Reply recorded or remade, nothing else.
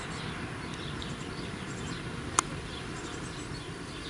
recorded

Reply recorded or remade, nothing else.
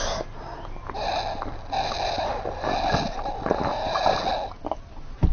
recorded